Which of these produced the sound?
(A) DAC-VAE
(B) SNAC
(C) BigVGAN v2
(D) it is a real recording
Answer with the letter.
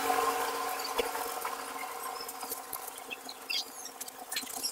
D